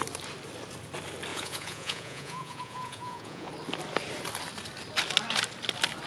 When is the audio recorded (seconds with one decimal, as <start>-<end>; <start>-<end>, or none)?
0.0-1.3; 3.5-6.1